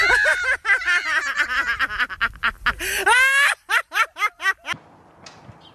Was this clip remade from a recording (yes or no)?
no